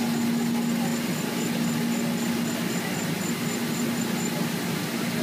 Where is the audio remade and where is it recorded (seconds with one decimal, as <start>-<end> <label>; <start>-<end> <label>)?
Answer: 0.0-5.2 recorded

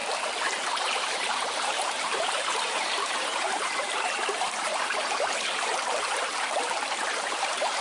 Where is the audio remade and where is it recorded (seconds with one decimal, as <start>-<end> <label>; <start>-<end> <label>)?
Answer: 0.0-0.7 recorded; 0.7-7.8 remade

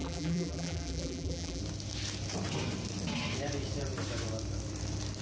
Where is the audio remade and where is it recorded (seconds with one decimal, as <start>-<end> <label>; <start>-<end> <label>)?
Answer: 0.0-1.6 remade; 1.6-5.2 recorded